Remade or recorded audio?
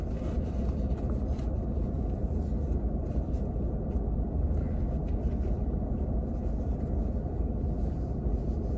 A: recorded